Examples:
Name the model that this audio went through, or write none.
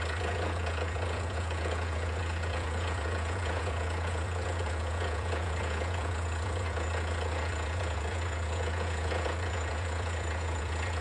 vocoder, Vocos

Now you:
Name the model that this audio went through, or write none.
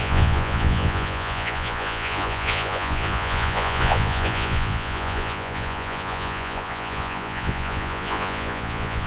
vocoder, Vocos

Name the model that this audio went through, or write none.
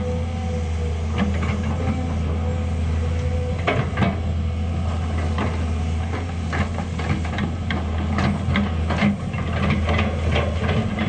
none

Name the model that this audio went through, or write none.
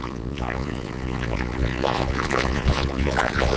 vocoder, Vocos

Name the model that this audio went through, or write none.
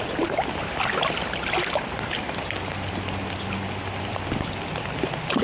none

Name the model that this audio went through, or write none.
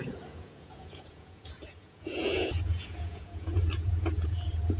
vocoder, Vocos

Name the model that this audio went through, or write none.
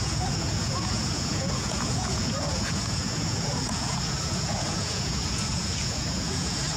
vocoder, Vocos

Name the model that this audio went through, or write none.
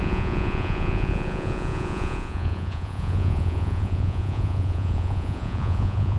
vocoder, Vocos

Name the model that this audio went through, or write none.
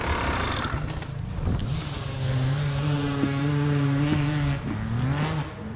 none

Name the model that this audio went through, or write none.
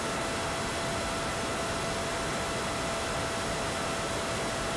none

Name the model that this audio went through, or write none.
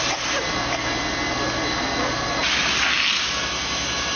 none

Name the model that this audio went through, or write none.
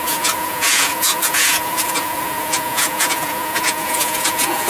vocoder, Vocos